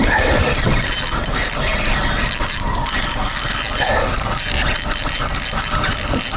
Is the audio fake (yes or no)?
no